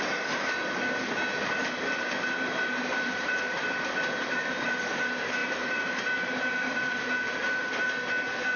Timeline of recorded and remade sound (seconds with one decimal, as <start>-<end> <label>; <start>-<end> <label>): 0.0-1.6 recorded; 1.6-4.8 remade; 4.8-5.4 recorded; 5.4-7.9 remade; 7.9-8.6 recorded